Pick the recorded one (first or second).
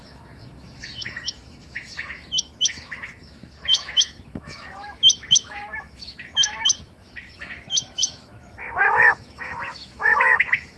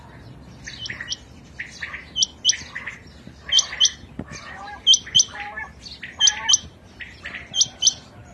second